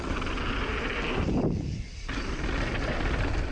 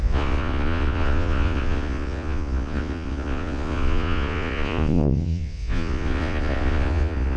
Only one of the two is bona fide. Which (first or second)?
first